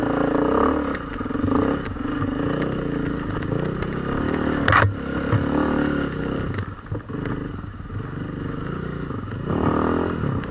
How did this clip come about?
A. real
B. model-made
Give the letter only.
A